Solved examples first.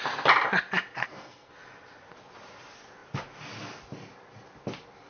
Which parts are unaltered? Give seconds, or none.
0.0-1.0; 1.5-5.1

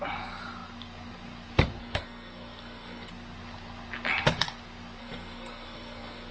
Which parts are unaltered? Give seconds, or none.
0.0-1.8; 3.1-5.0